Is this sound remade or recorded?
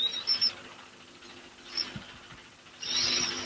recorded